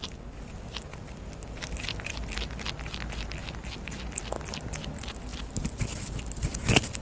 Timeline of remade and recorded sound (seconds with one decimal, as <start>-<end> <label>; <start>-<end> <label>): 0.0-7.0 recorded